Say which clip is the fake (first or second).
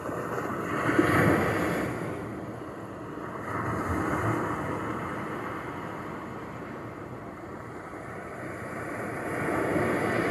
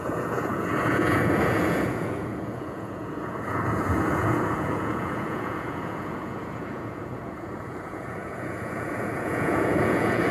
second